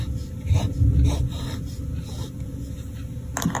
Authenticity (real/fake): real